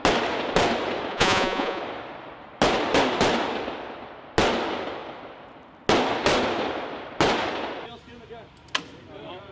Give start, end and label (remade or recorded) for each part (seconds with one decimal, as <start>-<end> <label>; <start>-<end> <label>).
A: 0.0-1.1 recorded; 1.1-1.8 remade; 1.8-9.5 recorded